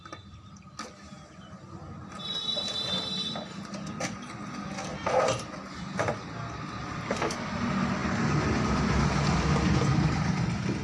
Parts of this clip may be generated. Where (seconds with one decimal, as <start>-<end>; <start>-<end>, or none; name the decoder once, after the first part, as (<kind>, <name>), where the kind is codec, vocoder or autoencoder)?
4.9-6.0 (vocoder, BigVGAN v2); 8.0-8.8